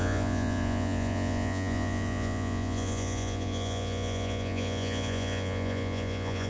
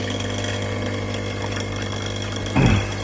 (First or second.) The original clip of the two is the second